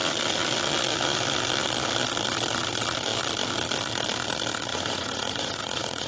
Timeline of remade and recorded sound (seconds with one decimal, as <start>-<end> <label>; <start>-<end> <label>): 0.0-4.7 recorded; 4.7-6.1 remade